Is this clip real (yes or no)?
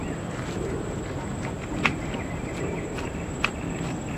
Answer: no